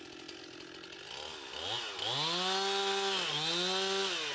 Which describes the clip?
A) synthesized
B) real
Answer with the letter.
B